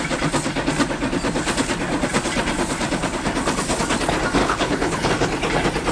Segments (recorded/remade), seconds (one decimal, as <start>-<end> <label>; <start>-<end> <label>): 0.0-4.4 recorded; 4.4-5.1 remade; 5.1-5.9 recorded